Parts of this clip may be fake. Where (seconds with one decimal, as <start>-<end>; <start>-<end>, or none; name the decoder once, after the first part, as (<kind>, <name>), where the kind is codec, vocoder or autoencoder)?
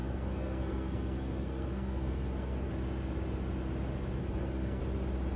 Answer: 0.0-2.7 (codec, SNAC); 4.2-4.8